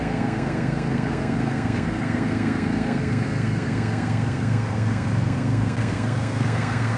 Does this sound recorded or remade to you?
remade